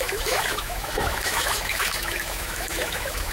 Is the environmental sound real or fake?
fake